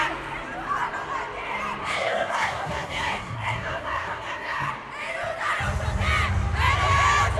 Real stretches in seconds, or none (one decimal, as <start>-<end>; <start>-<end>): 0.0-1.8; 4.7-7.4